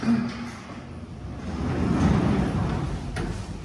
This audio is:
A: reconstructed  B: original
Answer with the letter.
B